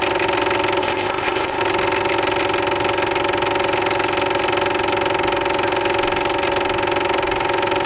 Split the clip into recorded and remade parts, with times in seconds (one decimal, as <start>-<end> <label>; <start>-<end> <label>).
0.0-0.8 recorded; 0.8-1.6 remade; 1.6-7.9 recorded